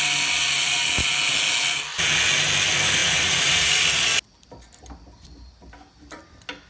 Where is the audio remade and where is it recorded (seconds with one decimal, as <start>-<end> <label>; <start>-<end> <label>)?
0.0-3.0 recorded; 3.0-3.7 remade; 3.7-6.7 recorded